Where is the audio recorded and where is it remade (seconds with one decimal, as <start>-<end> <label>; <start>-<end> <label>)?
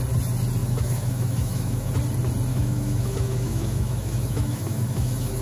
0.0-0.6 recorded; 0.6-1.9 remade; 1.9-2.5 recorded; 2.5-5.4 remade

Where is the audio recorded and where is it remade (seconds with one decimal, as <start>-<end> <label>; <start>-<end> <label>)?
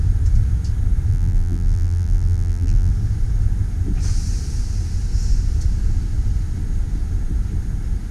0.0-1.1 recorded; 1.1-2.9 remade; 2.9-8.1 recorded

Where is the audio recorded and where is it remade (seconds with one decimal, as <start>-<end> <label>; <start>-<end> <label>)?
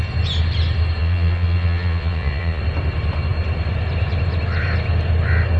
0.0-1.0 recorded; 1.0-2.6 remade; 2.6-5.6 recorded